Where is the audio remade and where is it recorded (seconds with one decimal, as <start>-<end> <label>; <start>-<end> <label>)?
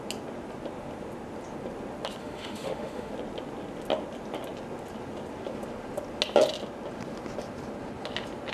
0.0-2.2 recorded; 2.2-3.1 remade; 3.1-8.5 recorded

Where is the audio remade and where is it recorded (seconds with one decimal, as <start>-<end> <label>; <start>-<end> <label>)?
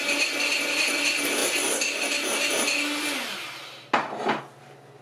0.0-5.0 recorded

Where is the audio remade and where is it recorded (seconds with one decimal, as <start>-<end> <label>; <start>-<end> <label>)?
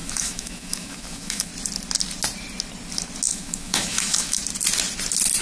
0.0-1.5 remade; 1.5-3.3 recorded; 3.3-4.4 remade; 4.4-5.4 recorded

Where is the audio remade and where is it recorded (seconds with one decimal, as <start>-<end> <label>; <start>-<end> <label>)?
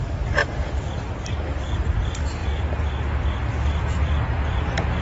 0.0-5.0 recorded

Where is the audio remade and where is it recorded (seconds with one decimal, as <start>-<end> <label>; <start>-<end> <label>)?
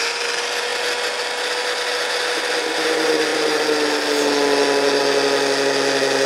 0.0-6.3 recorded